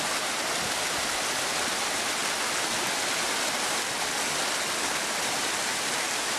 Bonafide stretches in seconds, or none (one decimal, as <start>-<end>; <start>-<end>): 0.0-6.4